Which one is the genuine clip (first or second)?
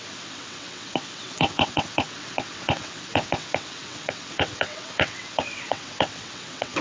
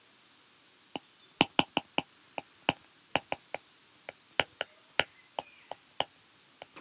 second